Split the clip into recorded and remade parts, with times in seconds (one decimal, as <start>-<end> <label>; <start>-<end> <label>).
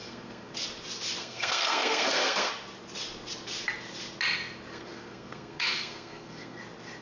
0.0-0.5 remade; 0.5-1.2 recorded; 1.2-2.5 remade; 2.5-4.7 recorded; 4.7-6.6 remade; 6.6-7.0 recorded